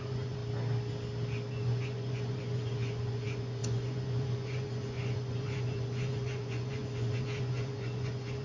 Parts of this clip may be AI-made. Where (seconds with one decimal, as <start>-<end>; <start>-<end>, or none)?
0.0-0.4; 1.5-8.4